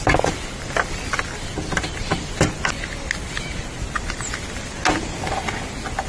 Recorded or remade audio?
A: recorded